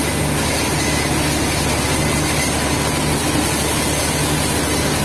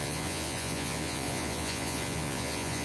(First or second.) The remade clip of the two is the second